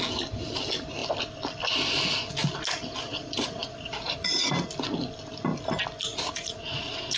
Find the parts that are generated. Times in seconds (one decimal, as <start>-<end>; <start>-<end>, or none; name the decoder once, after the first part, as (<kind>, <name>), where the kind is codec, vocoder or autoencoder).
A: 3.1-4.5 (vocoder, Vocos); 6.1-7.2